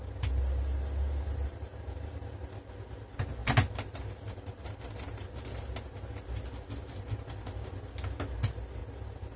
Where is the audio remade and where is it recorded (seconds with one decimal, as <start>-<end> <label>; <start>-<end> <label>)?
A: 0.0-9.4 recorded